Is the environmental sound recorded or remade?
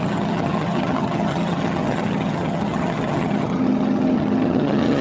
remade